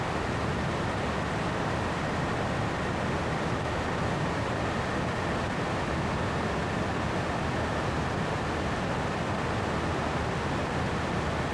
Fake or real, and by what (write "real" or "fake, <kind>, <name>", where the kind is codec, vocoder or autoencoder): real